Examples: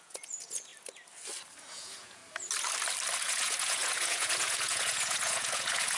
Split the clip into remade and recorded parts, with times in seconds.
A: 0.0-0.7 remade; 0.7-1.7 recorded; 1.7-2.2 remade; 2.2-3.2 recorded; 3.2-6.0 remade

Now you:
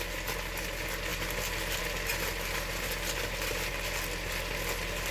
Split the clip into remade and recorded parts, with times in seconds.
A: 0.0-5.1 recorded

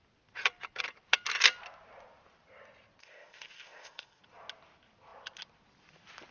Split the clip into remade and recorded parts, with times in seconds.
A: 0.0-3.0 recorded; 3.0-4.2 remade; 4.2-6.3 recorded

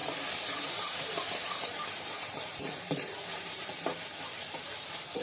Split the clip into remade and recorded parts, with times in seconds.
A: 0.0-5.2 remade